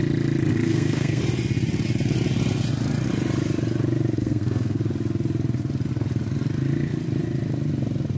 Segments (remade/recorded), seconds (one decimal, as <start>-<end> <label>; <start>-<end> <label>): 0.0-0.5 recorded; 0.5-1.2 remade; 1.2-4.2 recorded; 4.2-4.8 remade; 4.8-8.2 recorded